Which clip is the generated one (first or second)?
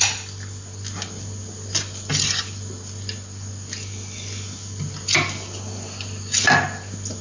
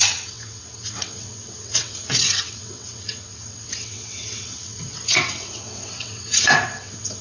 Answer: second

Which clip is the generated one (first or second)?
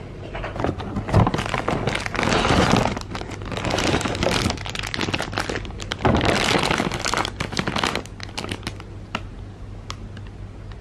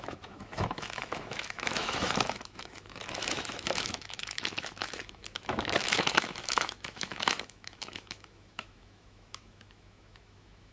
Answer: second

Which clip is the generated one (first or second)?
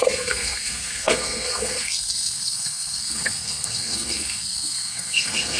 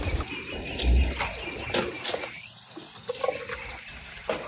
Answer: first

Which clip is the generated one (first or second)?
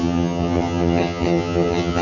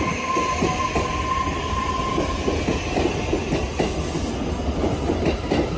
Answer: first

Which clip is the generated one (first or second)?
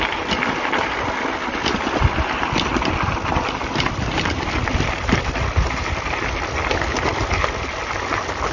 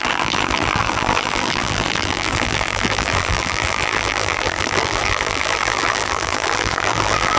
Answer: second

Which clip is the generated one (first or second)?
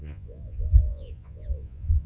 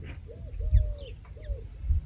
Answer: first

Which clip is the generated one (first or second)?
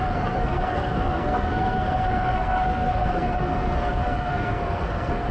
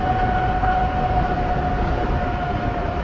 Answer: first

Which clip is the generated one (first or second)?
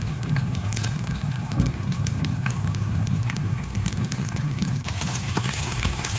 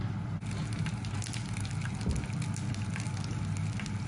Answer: first